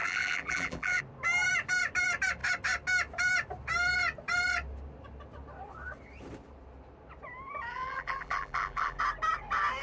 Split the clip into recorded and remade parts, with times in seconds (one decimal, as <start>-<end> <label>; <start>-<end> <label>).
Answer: 0.0-1.0 remade; 1.0-7.7 recorded; 7.7-9.0 remade; 9.0-9.8 recorded